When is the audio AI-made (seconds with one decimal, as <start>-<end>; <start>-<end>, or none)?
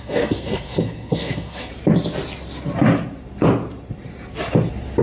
0.0-1.7